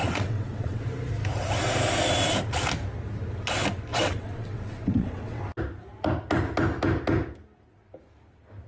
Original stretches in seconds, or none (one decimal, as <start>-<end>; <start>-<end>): 0.8-3.9; 5.4-8.7